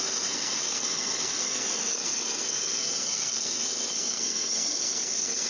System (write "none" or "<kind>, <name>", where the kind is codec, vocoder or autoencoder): codec, SNAC